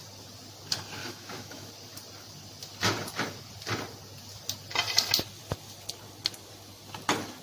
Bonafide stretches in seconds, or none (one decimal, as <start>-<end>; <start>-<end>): 0.0-1.0; 1.7-7.4